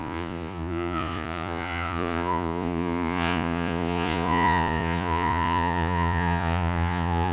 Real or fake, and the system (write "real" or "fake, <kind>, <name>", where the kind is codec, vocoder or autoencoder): fake, vocoder, Vocos